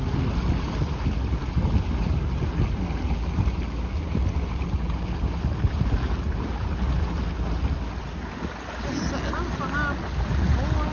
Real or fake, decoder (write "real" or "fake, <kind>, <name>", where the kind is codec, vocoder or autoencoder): real